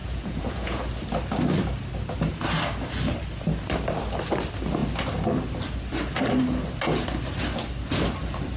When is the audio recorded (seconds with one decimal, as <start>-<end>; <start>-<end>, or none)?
0.8-8.6